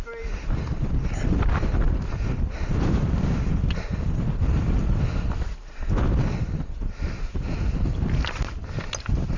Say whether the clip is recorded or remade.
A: recorded